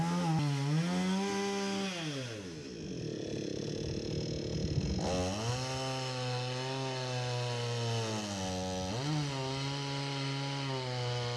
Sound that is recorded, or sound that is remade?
recorded